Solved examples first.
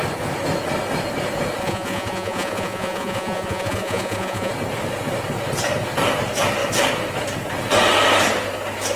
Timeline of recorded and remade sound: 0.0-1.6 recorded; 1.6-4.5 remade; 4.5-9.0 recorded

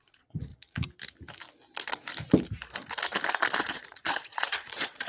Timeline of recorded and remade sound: 0.0-0.5 remade; 0.5-3.6 recorded; 3.6-5.1 remade

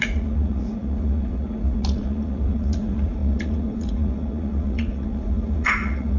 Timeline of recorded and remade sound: 0.0-6.2 remade

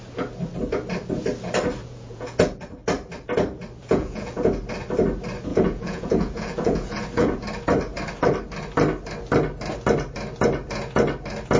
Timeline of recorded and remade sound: 0.0-1.8 recorded; 1.8-2.6 remade; 2.6-3.8 recorded; 3.8-4.5 remade; 4.5-5.5 recorded; 5.5-7.4 remade; 7.4-11.6 recorded

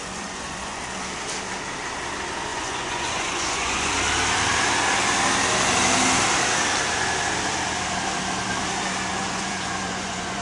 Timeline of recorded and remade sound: 0.0-0.8 remade; 0.8-2.5 recorded; 2.5-4.0 remade; 4.0-9.1 recorded; 9.1-10.4 remade

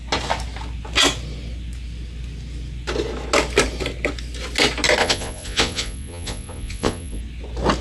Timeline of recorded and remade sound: 0.0-5.0 recorded; 5.0-7.2 remade; 7.2-7.8 recorded

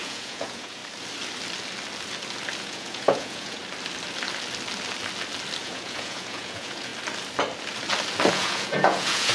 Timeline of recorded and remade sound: 0.0-0.8 remade; 0.8-2.6 recorded; 2.6-3.6 remade; 3.6-5.6 recorded; 5.6-6.9 remade; 6.9-8.3 recorded; 8.3-9.3 remade